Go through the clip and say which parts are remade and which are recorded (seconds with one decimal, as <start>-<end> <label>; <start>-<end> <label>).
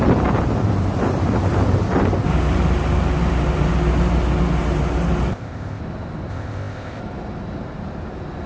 0.0-5.3 recorded; 5.3-5.8 remade; 5.8-6.3 recorded; 6.3-7.0 remade; 7.0-8.5 recorded